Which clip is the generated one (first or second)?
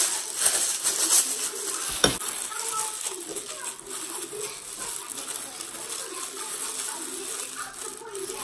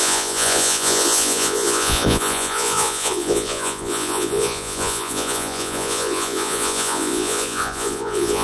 second